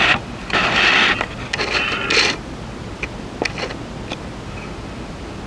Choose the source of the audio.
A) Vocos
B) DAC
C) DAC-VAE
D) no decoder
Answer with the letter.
D